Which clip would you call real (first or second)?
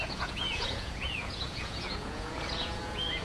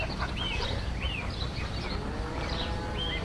second